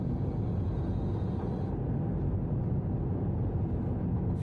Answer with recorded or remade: recorded